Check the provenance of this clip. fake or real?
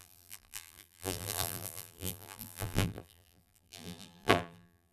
fake